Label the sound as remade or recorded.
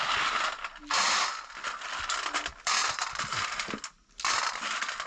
recorded